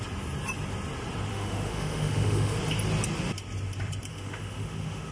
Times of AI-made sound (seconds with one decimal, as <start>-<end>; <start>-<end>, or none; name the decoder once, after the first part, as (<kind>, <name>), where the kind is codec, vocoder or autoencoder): 1.3-2.6 (autoencoder, DAC-VAE); 4.1-5.1